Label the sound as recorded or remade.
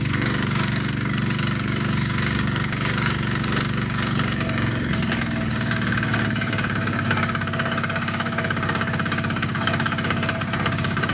remade